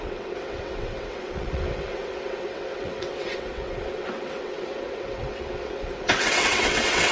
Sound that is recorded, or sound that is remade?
remade